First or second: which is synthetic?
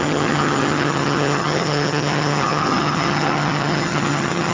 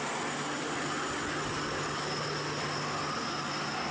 first